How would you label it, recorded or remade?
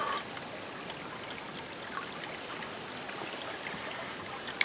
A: recorded